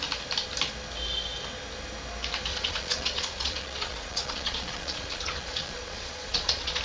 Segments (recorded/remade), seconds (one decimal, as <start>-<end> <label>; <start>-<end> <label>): 0.0-2.5 recorded; 2.5-6.8 remade